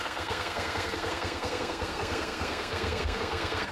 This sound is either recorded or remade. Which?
remade